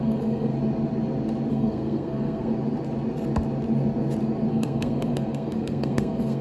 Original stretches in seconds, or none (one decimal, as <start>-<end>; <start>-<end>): 0.5-1.5; 2.5-4.5